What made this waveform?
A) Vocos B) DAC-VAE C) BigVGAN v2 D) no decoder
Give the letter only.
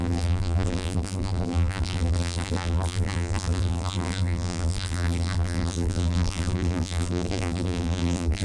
C